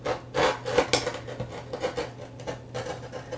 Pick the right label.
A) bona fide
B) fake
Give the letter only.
A